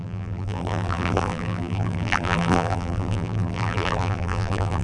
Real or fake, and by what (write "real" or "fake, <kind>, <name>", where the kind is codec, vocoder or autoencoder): fake, vocoder, BigVGAN v2